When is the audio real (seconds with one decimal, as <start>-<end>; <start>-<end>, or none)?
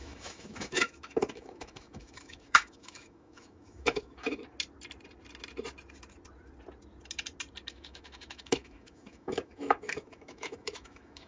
4.4-7.7